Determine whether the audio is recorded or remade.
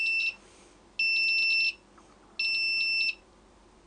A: recorded